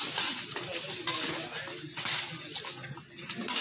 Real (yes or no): yes